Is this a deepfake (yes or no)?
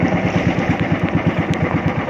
yes